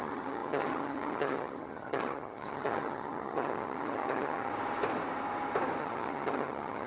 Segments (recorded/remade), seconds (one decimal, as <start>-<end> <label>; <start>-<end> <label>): 0.0-4.5 remade; 4.5-5.8 recorded; 5.8-6.9 remade